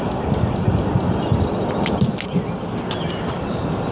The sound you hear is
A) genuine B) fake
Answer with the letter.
A